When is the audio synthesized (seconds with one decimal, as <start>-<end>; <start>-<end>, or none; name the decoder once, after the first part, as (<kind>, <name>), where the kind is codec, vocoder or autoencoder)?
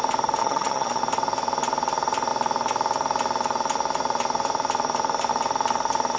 0.4-1.0 (vocoder, HiFi-GAN)